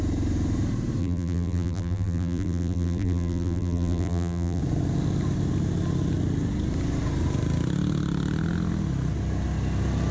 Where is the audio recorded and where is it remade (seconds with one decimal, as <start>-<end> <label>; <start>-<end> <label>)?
0.0-1.0 recorded; 1.0-4.6 remade; 4.6-10.1 recorded